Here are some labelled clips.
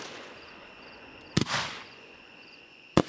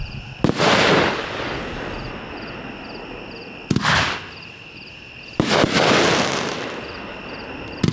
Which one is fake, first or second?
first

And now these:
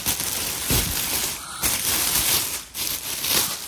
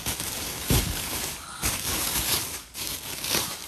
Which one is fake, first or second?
second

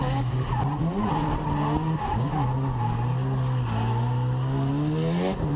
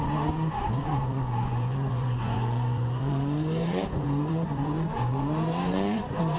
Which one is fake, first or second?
second